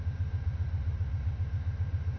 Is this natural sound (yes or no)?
yes